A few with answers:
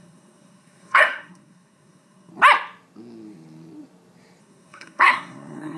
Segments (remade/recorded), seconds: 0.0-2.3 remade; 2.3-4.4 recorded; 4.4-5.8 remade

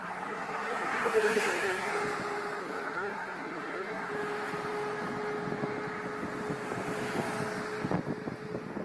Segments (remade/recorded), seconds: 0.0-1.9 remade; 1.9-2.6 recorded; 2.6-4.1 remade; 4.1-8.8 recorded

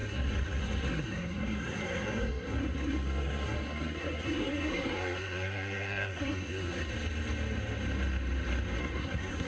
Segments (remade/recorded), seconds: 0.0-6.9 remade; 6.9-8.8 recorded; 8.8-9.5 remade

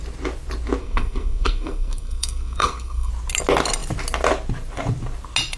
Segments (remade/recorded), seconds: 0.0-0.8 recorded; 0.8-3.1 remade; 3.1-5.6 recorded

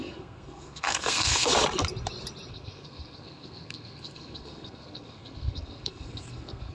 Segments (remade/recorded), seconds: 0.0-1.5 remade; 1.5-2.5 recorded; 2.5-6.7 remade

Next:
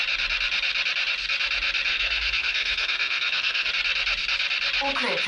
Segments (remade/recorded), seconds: 0.0-1.9 recorded; 1.9-3.7 remade; 3.7-5.3 recorded

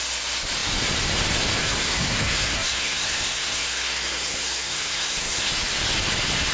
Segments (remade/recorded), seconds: 0.0-1.6 recorded; 1.6-5.5 remade; 5.5-6.5 recorded

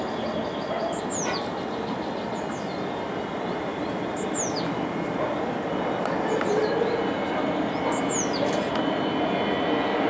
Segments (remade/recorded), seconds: 0.0-10.1 recorded